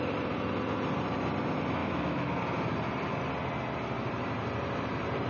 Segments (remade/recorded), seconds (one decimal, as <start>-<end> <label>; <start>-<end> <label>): 0.0-1.8 recorded; 1.8-2.4 remade; 2.4-5.3 recorded